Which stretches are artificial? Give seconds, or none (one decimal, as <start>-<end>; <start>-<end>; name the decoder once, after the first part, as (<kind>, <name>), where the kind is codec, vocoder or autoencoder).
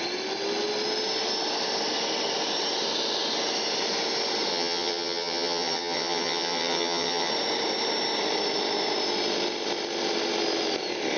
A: 4.5-7.3 (vocoder, HiFi-GAN)